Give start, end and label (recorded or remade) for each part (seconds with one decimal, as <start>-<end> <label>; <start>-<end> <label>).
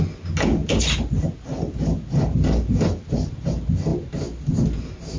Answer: 0.0-5.2 recorded